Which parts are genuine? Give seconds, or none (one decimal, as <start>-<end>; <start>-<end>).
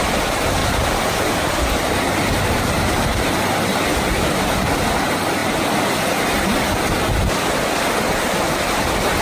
0.0-0.6; 4.4-9.2